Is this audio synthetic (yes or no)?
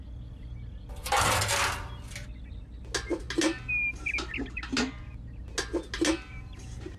no